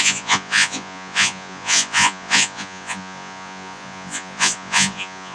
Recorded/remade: remade